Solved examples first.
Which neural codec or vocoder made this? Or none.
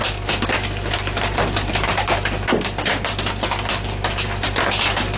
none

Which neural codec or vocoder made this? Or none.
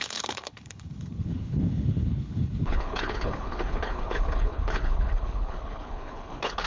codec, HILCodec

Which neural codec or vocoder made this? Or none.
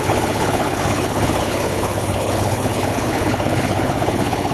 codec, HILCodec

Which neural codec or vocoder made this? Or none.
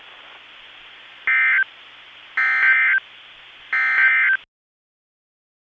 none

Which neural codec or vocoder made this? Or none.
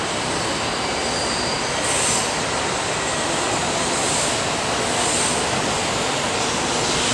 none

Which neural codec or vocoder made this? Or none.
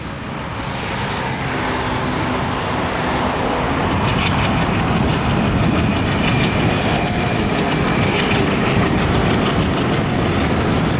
none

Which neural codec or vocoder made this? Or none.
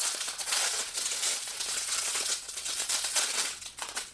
vocoder, WaveNeXt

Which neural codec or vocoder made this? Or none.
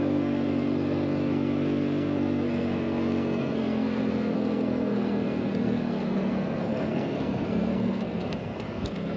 codec, SNAC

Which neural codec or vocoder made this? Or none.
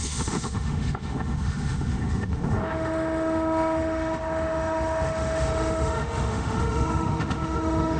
autoencoder, DAC-VAE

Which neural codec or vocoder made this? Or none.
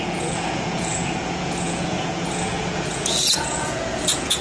vocoder, Vocos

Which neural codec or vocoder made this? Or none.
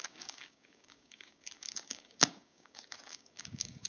codec, DAC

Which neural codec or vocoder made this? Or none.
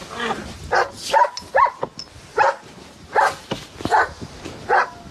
none